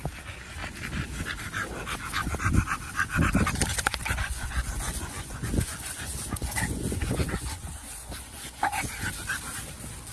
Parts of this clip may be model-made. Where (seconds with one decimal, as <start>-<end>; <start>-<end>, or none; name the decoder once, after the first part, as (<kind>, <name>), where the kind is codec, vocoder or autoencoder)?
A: 3.7-8.9 (vocoder, Vocos)